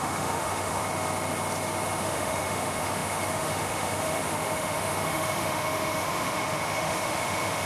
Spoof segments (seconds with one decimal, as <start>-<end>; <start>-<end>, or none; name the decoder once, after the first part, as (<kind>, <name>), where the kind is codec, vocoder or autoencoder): 0.0-0.8 (autoencoder, DAC-VAE); 2.0-7.7